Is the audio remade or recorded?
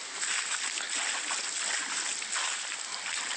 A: recorded